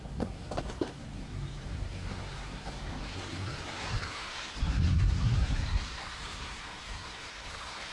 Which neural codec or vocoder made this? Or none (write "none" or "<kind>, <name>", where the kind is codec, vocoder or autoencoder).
codec, SNAC